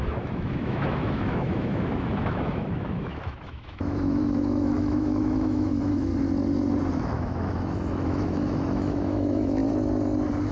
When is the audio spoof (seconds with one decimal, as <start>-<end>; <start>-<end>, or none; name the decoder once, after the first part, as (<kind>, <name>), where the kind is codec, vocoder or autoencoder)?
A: 0.0-6.1 (autoencoder, DAC-VAE); 6.9-9.6